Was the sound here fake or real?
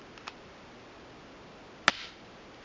real